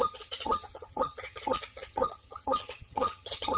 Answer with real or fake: fake